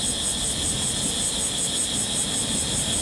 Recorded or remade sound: recorded